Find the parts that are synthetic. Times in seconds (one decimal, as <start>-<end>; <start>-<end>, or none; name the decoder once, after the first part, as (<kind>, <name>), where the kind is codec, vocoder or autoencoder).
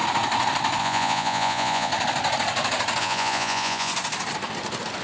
0.8-1.9 (vocoder, Vocos); 3.0-3.9